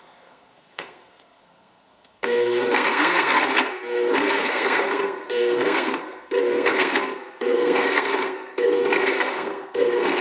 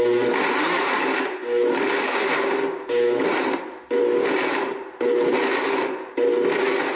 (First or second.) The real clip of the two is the second